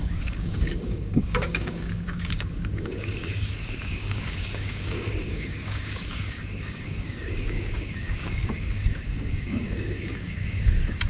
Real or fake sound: fake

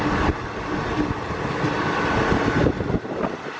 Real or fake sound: real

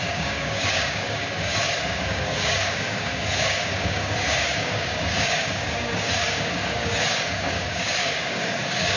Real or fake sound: fake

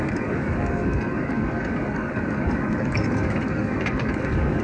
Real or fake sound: fake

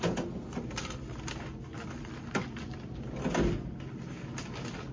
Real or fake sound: real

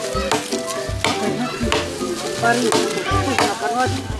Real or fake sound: real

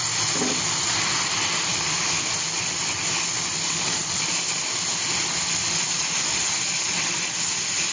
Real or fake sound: real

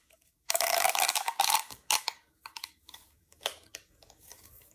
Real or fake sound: fake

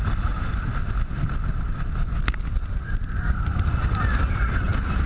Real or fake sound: real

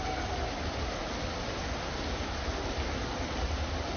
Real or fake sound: real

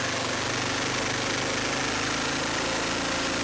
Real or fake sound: real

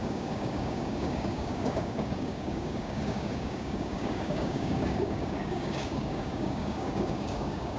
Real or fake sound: fake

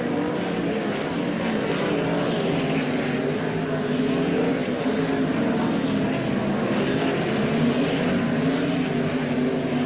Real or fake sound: real